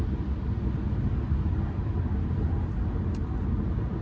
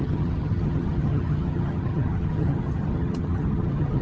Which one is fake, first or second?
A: second